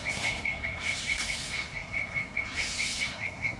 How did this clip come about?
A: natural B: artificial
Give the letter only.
B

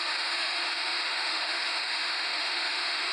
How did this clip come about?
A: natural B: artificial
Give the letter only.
B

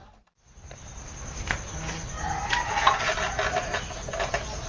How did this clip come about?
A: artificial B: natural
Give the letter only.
B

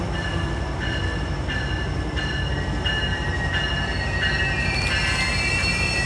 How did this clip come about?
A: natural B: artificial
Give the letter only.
A